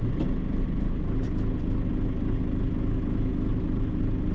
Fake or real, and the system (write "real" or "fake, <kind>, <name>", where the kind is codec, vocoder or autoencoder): real